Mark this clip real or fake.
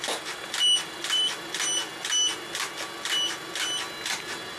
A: real